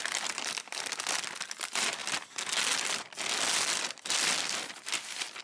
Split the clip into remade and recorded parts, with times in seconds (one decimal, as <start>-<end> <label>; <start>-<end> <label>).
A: 0.0-5.4 recorded